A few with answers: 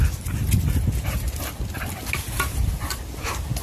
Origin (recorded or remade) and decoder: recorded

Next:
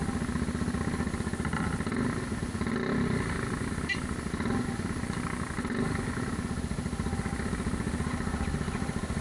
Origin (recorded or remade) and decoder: recorded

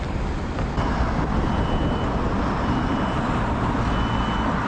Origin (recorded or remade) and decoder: recorded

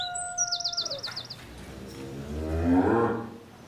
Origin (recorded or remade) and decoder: recorded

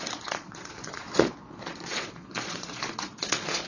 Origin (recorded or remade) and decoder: remade, vocoder, Vocos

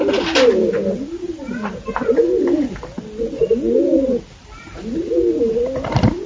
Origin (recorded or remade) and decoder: recorded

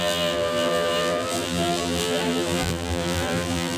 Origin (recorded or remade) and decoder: remade, vocoder, BigVGAN v2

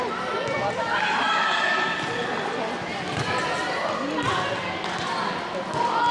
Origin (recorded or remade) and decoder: recorded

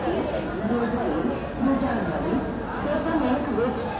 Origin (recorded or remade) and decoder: recorded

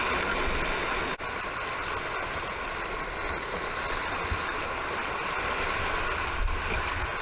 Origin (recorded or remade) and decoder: recorded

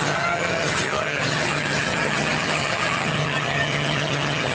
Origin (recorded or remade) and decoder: remade, vocoder, HiFi-GAN